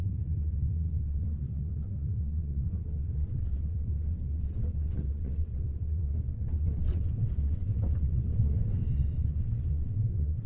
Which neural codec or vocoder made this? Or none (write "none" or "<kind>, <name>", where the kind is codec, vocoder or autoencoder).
vocoder, WaveNeXt